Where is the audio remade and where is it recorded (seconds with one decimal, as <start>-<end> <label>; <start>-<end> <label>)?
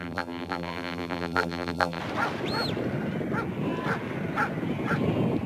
0.0-2.0 remade; 2.0-5.5 recorded